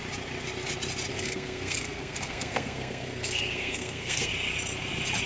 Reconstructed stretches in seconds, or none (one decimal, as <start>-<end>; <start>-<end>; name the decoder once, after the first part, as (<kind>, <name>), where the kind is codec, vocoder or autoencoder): 1.1-4.3 (codec, SNAC)